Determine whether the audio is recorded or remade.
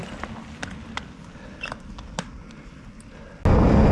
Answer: recorded